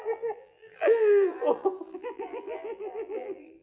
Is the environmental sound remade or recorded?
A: remade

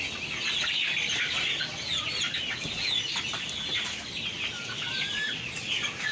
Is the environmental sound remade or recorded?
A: recorded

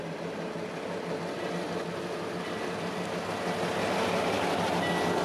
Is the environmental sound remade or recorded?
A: recorded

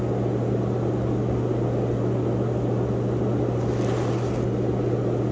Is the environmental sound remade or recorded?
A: recorded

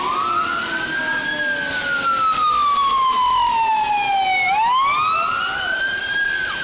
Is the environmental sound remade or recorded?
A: recorded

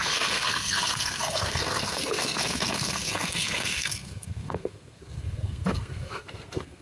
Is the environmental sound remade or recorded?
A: remade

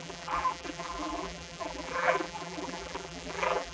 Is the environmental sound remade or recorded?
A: remade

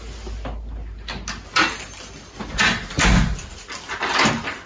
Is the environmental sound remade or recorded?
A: recorded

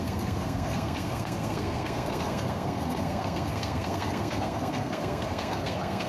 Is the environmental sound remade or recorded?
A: remade